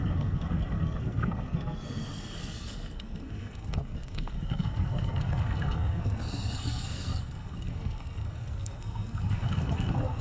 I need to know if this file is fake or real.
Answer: fake